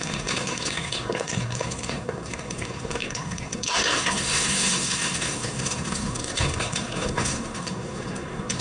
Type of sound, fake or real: fake